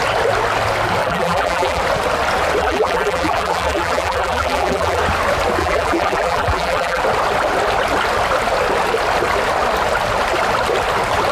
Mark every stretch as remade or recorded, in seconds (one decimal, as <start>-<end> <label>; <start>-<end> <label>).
0.0-1.0 recorded; 1.0-1.8 remade; 1.8-2.6 recorded; 2.6-5.0 remade; 5.0-5.6 recorded; 5.6-7.0 remade; 7.0-11.3 recorded